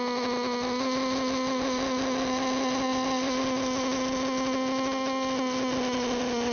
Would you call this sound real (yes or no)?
yes